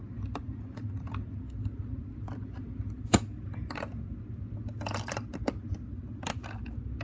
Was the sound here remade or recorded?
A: recorded